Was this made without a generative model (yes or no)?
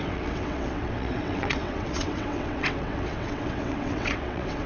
no